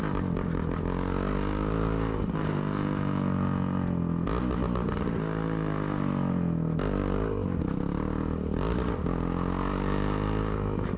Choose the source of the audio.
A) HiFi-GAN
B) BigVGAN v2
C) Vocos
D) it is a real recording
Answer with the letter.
D